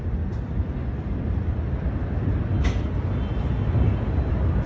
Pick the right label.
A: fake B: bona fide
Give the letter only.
B